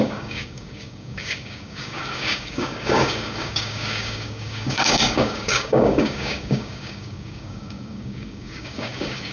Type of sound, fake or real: fake